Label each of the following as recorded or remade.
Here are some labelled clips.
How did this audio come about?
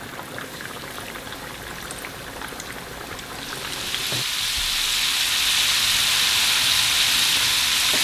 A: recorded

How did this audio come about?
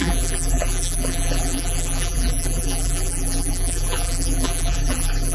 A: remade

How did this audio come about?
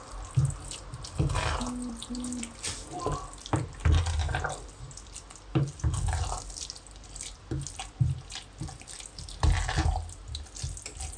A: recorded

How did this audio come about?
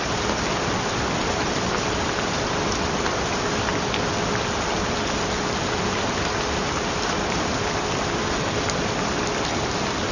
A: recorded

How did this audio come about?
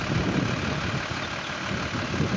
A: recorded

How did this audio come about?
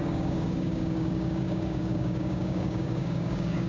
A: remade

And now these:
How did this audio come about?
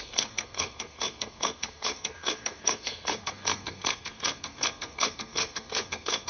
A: remade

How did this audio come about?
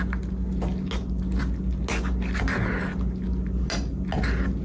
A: recorded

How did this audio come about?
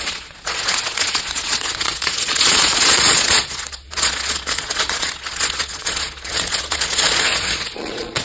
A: remade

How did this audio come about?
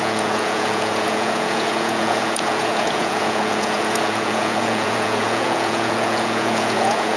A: remade